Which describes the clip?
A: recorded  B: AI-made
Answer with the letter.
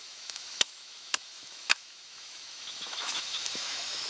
B